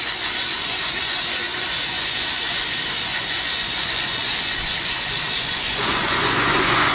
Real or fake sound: fake